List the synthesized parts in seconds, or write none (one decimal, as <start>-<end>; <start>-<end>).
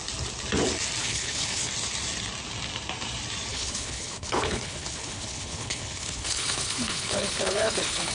1.0-1.7; 3.5-8.1